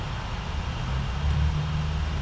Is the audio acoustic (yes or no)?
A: yes